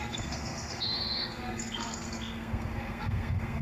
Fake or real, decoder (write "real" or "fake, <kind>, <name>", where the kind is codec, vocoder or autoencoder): fake, codec, SNAC